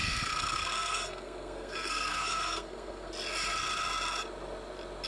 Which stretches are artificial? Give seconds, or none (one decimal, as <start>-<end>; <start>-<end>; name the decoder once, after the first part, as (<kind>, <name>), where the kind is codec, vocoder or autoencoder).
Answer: 0.0-3.1 (codec, SNAC)